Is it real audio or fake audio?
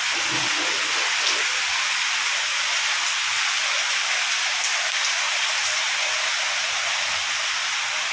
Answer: real